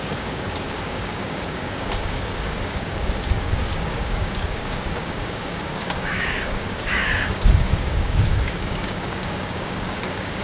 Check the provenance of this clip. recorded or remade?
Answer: remade